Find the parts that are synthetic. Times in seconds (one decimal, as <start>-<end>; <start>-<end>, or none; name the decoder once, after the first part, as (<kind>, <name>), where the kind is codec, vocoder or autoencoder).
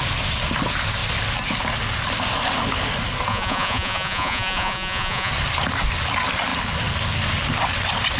3.3-5.3 (vocoder, Vocos)